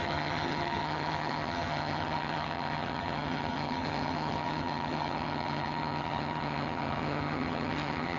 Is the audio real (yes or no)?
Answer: no